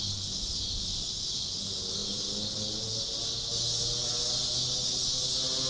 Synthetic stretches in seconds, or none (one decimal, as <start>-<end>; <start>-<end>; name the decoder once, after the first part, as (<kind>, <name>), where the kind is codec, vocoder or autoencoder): none